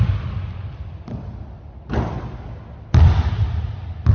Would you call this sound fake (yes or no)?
no